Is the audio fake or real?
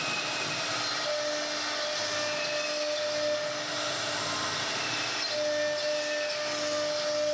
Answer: real